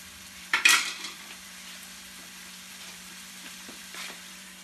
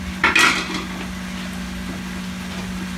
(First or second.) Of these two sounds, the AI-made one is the first